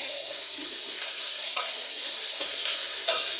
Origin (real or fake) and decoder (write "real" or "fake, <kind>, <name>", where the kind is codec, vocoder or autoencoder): fake, codec, SNAC